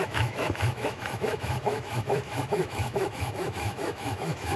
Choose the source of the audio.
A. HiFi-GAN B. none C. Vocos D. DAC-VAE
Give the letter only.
D